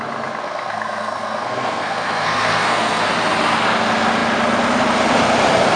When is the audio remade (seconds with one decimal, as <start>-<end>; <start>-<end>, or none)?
0.4-3.1